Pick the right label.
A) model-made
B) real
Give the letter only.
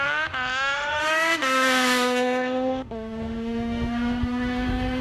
A